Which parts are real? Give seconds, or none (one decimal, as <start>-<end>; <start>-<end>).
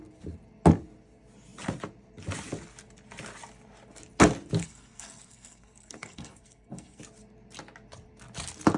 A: 0.0-4.6; 7.0-8.8